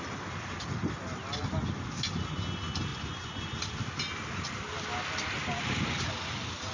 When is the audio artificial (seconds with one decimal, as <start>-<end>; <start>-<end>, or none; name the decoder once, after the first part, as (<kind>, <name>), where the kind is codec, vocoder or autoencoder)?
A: 2.9-3.4 (vocoder, Vocos)